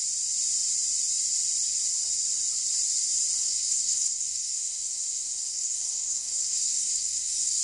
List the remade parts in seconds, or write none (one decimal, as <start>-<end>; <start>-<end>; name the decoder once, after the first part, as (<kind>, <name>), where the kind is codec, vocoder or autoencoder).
3.4-7.6 (codec, SNAC)